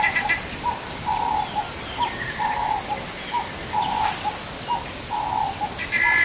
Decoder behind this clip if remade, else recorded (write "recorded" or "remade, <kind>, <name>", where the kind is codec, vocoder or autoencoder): recorded